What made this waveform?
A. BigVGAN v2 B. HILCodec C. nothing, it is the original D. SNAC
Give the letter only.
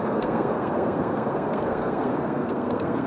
D